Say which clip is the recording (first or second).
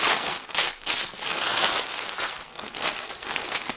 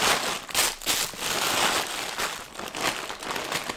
second